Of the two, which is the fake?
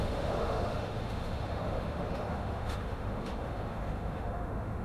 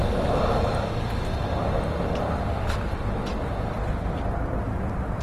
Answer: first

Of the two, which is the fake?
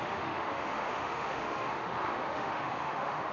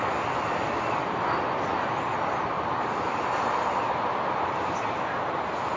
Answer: first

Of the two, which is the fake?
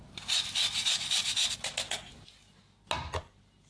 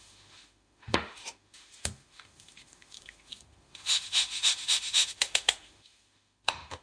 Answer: second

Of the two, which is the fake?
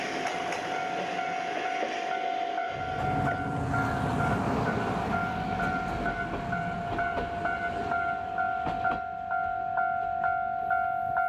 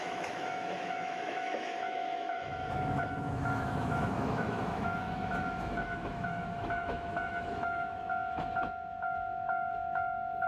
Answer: second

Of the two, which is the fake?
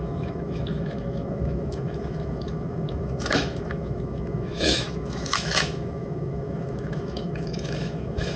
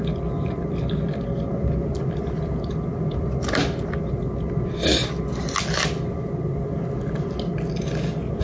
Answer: first